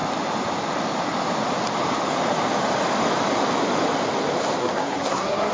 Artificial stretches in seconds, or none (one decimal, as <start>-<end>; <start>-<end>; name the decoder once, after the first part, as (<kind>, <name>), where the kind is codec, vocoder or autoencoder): 4.6-5.5 (codec, SNAC)